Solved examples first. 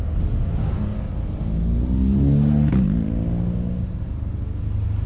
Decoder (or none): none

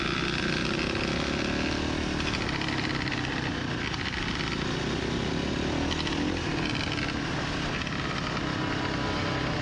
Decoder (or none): none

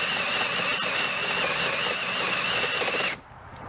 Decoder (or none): none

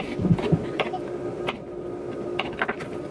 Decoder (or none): none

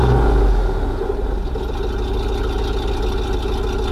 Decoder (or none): none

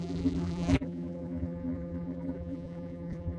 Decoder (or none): vocoder, BigVGAN v2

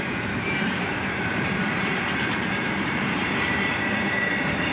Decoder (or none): vocoder, BigVGAN v2